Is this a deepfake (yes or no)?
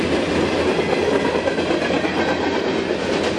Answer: no